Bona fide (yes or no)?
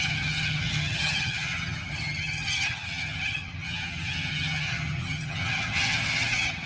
no